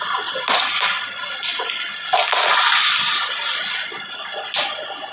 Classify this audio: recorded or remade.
recorded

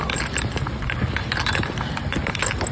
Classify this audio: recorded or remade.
recorded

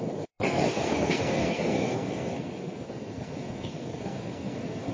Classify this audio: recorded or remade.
remade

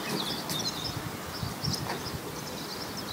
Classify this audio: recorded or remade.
recorded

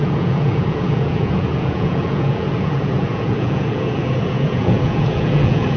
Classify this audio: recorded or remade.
remade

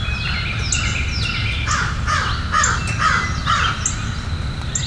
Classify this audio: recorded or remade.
recorded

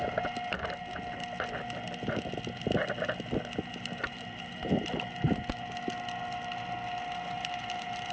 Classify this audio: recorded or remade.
recorded